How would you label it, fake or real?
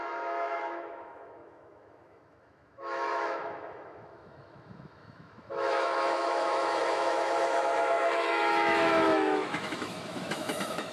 fake